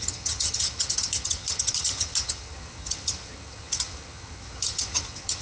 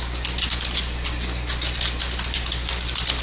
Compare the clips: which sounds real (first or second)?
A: second